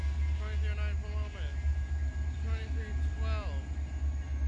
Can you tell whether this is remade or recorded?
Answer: recorded